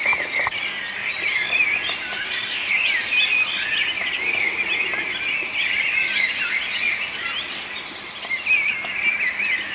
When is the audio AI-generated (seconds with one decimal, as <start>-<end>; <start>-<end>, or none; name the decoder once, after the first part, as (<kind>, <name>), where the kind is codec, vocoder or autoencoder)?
1.0-2.7 (vocoder, BigVGAN v2); 4.0-8.7